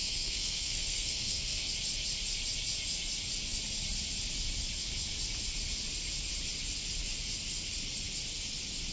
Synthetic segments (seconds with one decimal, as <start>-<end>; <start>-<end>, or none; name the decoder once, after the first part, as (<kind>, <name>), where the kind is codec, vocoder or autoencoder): 0.0-1.7 (codec, SNAC)